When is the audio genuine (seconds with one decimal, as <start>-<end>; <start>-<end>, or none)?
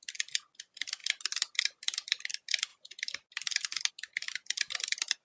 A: 0.0-5.2